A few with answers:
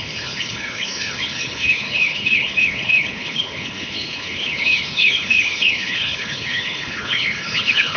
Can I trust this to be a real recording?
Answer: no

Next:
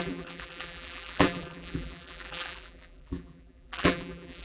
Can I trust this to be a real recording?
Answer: no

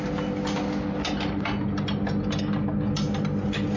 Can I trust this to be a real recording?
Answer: yes